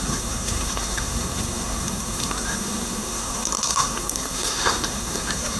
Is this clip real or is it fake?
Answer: fake